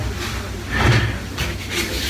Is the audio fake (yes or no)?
no